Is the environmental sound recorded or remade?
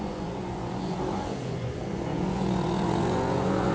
remade